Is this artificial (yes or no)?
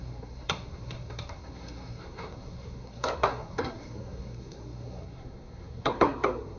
yes